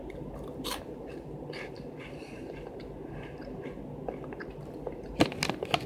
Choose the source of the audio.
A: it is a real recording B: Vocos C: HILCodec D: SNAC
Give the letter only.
A